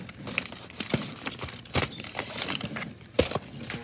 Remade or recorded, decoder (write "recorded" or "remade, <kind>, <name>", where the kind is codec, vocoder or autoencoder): recorded